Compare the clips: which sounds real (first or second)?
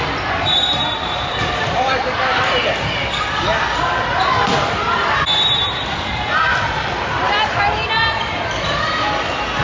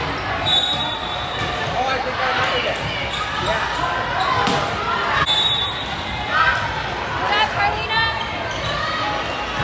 second